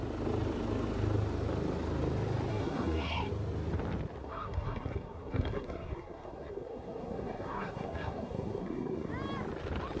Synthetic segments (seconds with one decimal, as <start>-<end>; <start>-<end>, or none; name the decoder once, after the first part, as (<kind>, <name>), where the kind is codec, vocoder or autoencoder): 2.5-3.3 (codec, SNAC); 4.2-9.1